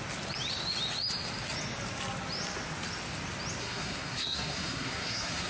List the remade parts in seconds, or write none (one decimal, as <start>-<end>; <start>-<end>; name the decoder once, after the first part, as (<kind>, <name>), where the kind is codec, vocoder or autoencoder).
3.6-5.5 (codec, SNAC)